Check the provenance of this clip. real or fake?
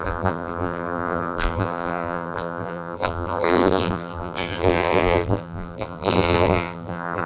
fake